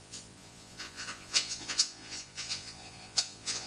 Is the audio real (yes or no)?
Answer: no